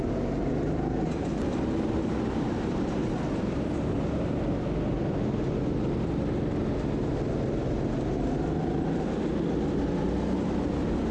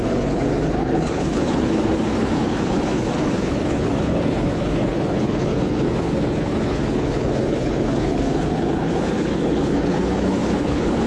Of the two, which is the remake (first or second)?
second